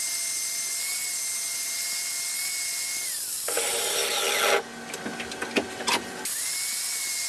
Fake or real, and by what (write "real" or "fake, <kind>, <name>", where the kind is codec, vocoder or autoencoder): real